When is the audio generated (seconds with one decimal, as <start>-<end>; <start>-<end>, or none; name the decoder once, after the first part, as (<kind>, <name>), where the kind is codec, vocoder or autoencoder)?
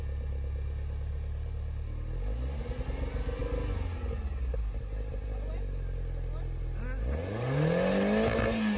none